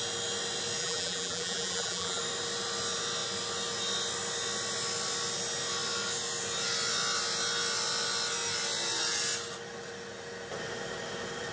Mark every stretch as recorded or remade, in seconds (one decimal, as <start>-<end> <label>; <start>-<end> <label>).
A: 0.0-0.8 recorded; 0.8-2.2 remade; 2.2-11.5 recorded